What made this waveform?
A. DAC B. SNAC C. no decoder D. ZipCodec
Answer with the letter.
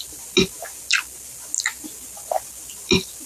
C